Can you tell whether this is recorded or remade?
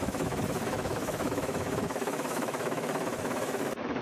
remade